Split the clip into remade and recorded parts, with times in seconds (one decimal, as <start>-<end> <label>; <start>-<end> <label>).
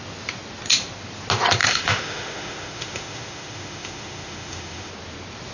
0.0-1.6 recorded; 1.6-4.9 remade; 4.9-5.5 recorded